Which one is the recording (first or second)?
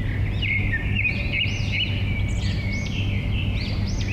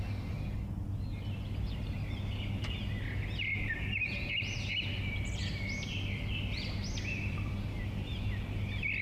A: first